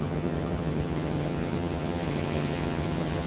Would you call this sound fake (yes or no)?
yes